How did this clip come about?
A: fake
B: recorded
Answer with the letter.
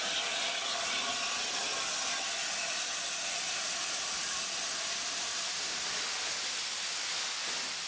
B